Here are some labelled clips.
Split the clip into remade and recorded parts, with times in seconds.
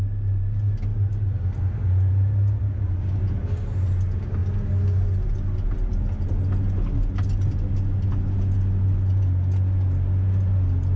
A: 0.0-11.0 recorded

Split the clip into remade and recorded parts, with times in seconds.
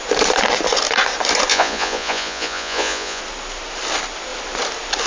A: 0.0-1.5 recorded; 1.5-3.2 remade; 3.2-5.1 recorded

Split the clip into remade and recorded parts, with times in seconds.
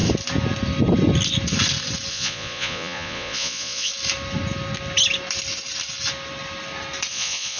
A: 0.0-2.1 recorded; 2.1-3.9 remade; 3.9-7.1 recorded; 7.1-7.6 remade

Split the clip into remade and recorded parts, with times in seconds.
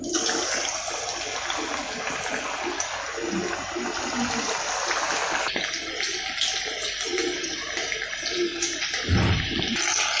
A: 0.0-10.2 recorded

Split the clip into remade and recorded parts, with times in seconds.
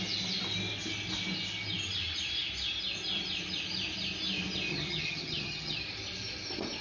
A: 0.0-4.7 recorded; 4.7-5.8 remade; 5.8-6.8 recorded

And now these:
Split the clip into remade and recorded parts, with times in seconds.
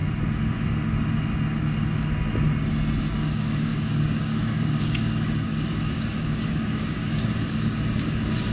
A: 0.0-3.1 recorded; 3.1-8.5 remade